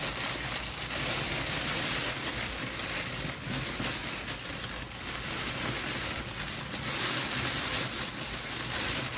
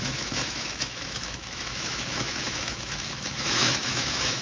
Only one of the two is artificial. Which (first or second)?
second